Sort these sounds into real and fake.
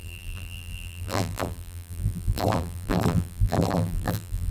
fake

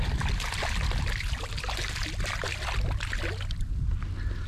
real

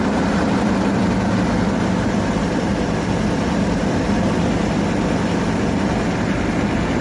fake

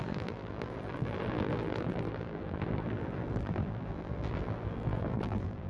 fake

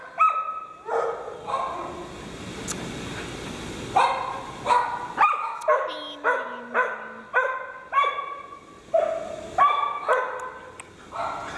real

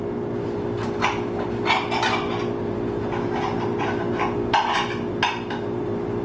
real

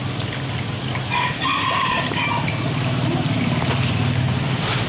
real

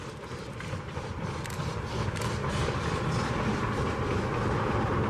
real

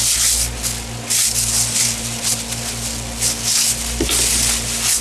real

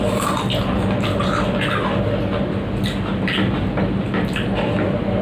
real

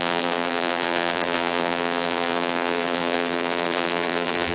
fake